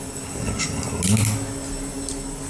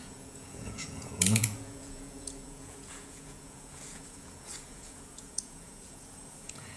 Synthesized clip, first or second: second